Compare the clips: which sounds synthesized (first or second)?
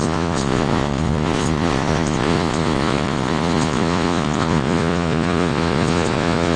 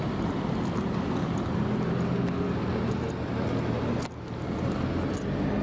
first